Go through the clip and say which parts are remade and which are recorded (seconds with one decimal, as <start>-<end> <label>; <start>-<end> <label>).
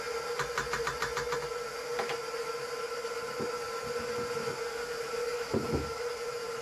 0.0-5.2 recorded; 5.2-6.1 remade; 6.1-6.6 recorded